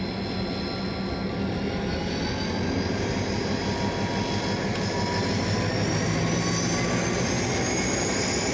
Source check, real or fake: real